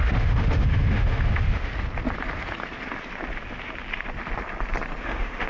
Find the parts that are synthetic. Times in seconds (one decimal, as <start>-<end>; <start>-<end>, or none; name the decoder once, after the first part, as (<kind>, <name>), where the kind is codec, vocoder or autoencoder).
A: 0.0-1.7 (autoencoder, DAC-VAE); 5.0-5.5